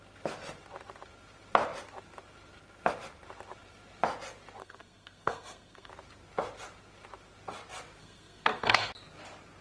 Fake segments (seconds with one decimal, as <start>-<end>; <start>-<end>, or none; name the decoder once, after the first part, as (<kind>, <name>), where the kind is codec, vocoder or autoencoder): 4.6-5.9 (codec, SNAC); 8.0-8.9

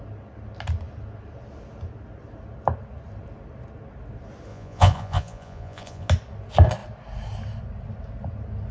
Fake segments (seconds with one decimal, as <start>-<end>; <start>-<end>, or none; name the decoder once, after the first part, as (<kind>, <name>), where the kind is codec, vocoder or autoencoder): 4.5-6.1 (vocoder, Vocos)

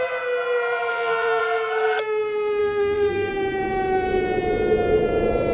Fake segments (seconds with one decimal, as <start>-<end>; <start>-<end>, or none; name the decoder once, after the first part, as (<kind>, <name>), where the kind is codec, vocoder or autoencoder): 0.9-1.4 (vocoder, BigVGAN v2); 2.6-3.3

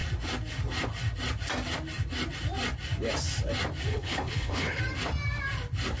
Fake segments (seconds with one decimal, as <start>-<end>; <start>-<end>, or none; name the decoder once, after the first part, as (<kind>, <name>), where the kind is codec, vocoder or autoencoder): 3.9-4.8 (codec, HILCodec)

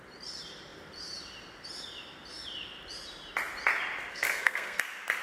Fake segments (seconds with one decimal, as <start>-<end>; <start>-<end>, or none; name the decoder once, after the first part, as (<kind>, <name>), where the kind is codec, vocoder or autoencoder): 4.1-4.8 (codec, SNAC)

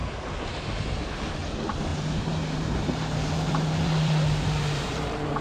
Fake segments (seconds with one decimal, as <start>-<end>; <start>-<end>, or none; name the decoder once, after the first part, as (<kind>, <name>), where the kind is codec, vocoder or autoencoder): 1.9-5.4 (vocoder, BigVGAN v2)

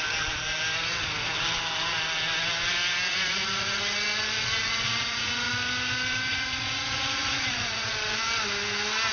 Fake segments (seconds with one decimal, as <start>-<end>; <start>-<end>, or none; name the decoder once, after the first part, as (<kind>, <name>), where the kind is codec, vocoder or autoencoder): 3.1-3.8 (vocoder, Vocos); 4.6-5.5; 6.3-7.9